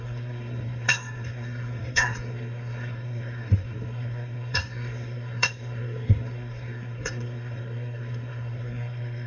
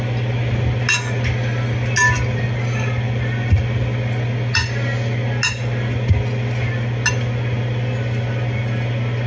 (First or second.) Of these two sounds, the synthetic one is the first